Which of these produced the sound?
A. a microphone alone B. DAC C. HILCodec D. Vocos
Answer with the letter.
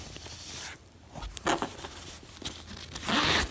A